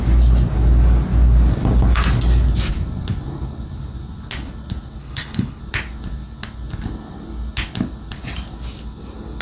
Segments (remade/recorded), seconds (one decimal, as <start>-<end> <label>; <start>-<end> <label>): 0.0-5.0 recorded; 5.0-5.6 remade; 5.6-9.4 recorded